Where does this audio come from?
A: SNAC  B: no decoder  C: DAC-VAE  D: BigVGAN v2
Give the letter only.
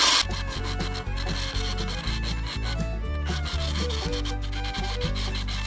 B